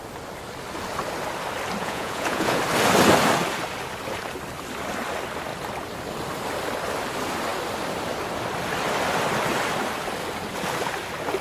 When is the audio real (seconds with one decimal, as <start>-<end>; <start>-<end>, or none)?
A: 0.0-1.8; 2.6-11.4